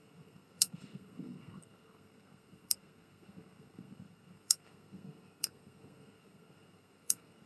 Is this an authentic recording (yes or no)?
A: no